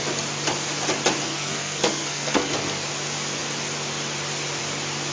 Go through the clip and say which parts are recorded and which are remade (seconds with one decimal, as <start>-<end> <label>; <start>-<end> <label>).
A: 0.0-1.3 recorded; 1.3-2.5 remade; 2.5-5.1 recorded